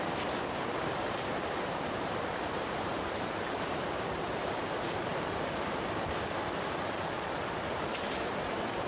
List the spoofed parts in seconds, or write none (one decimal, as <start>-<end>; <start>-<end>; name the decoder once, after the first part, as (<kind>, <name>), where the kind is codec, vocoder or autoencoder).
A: 0.0-5.1 (vocoder, BigVGAN v2); 7.7-8.9